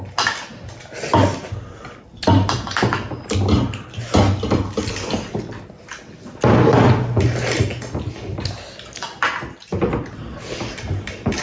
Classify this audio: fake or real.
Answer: real